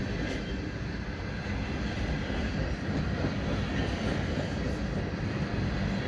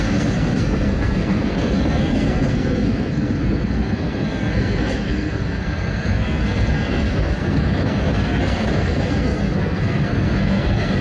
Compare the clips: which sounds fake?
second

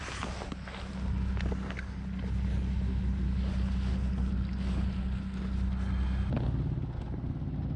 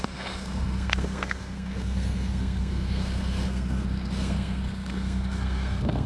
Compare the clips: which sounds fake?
second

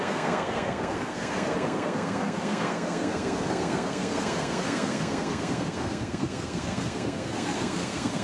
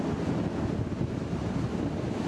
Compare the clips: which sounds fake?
first